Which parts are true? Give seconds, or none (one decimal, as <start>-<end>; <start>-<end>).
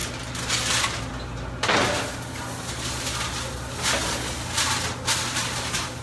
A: 0.0-6.0